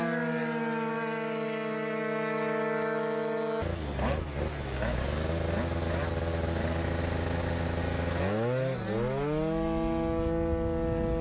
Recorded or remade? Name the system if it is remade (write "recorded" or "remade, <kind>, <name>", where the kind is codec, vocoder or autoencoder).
recorded